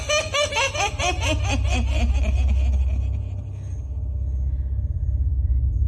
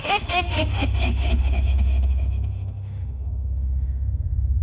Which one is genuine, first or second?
first